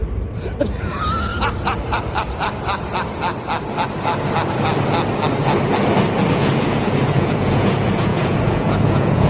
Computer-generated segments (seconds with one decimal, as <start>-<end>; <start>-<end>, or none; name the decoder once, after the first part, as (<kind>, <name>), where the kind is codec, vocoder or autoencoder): 0.8-1.3 (vocoder, Vocos); 6.3-9.3